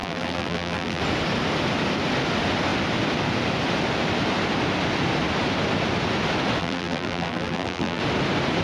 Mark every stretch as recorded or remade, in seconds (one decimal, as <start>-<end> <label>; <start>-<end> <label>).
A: 0.0-1.0 remade; 1.0-6.6 recorded; 6.6-8.0 remade; 8.0-8.6 recorded